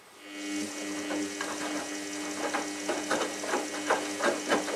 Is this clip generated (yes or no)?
no